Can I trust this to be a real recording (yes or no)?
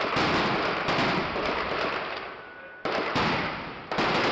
yes